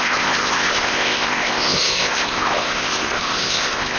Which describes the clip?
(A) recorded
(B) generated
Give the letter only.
B